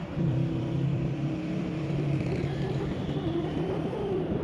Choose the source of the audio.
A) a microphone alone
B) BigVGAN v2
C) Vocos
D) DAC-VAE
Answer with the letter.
B